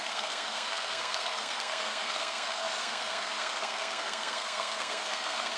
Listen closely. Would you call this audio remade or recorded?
remade